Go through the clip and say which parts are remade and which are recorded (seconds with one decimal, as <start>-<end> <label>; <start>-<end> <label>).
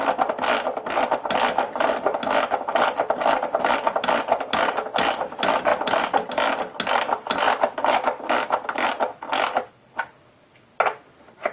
0.0-11.5 recorded